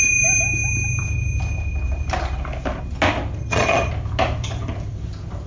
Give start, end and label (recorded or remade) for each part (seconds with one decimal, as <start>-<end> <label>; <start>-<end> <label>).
0.0-3.4 recorded; 3.4-3.9 remade; 3.9-5.5 recorded